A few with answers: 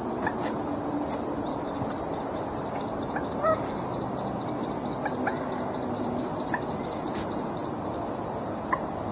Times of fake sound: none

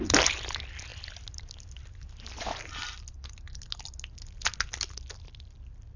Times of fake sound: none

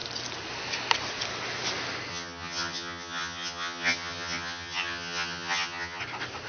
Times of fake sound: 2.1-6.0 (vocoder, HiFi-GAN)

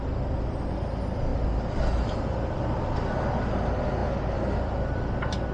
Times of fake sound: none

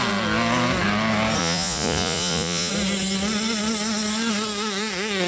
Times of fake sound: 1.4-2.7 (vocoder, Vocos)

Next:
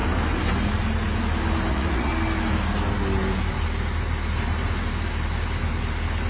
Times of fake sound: 1.7-2.1 (vocoder, Vocos)